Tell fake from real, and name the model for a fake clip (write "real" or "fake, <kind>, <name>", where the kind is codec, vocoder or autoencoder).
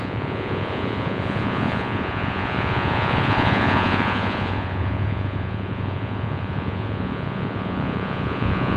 fake, vocoder, Vocos